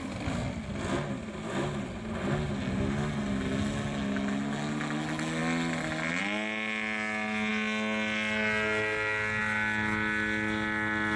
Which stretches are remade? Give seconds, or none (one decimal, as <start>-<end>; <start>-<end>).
none